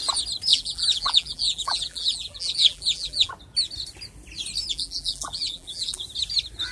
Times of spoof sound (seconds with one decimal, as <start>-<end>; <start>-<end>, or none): 0.5-3.3; 4.7-6.0